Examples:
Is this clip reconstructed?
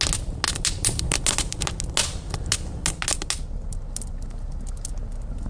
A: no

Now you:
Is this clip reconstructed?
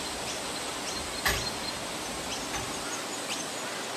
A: no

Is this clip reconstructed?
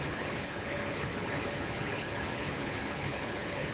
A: yes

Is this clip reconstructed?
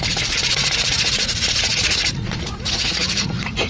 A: yes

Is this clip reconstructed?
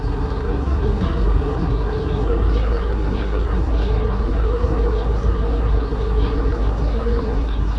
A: yes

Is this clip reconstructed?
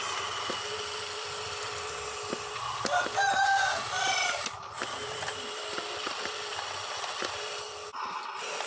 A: no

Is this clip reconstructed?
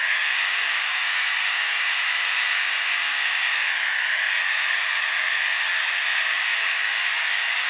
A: yes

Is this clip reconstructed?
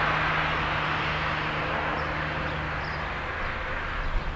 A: no